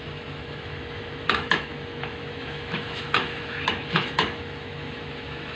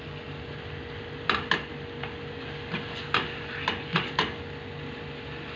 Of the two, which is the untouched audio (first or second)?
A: second